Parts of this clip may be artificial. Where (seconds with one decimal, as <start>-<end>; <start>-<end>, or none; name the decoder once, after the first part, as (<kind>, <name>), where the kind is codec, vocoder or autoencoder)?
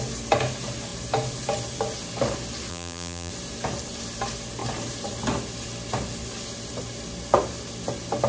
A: 2.7-3.3 (vocoder, BigVGAN v2)